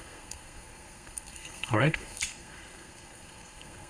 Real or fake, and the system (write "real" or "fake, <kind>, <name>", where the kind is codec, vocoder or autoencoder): fake, codec, SNAC